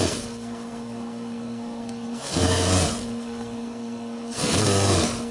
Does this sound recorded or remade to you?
remade